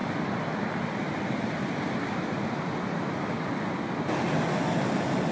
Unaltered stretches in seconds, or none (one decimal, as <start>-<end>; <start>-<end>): 0.0-5.3